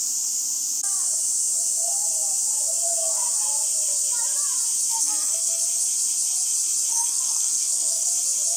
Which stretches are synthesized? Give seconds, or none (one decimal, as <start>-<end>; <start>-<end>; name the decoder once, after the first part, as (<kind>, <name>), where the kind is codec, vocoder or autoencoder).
4.9-5.6 (codec, SNAC); 6.9-8.1